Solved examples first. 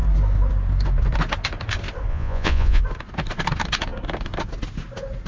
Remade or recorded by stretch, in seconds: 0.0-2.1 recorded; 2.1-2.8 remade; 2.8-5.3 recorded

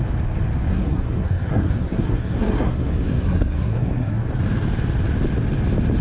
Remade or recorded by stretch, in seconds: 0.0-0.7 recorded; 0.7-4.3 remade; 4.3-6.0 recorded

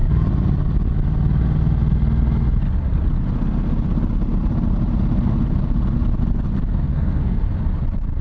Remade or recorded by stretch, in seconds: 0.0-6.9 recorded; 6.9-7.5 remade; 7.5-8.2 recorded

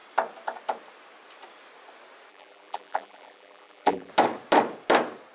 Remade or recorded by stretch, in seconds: 0.0-2.3 recorded; 2.3-4.1 remade; 4.1-5.3 recorded